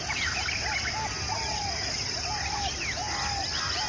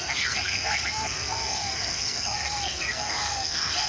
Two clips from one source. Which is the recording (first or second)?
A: first